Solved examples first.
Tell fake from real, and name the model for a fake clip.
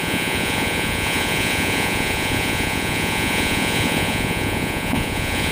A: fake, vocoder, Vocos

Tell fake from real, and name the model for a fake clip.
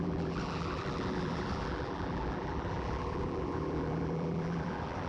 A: fake, vocoder, BigVGAN v2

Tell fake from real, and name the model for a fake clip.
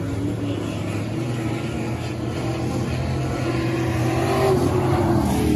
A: real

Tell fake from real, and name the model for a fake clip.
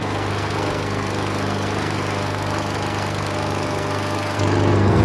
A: fake, codec, SNAC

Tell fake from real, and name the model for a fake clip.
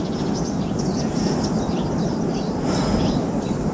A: real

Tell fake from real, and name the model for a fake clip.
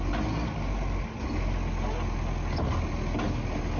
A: real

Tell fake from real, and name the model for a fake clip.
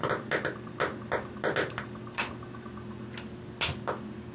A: real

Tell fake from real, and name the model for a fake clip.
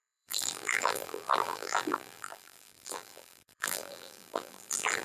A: fake, vocoder, BigVGAN v2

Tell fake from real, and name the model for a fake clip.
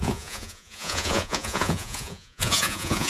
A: fake, vocoder, Vocos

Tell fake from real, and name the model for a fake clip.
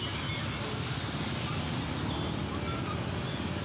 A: real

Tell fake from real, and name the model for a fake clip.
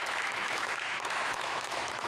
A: fake, autoencoder, DAC-VAE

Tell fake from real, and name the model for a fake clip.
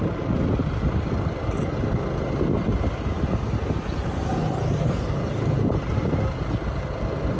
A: real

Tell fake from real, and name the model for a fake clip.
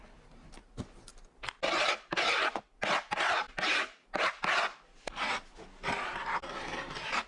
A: real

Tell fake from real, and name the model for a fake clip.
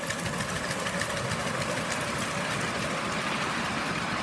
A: real